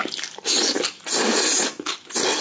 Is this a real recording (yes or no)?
yes